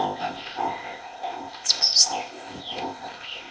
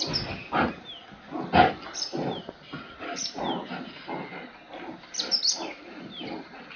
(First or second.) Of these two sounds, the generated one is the first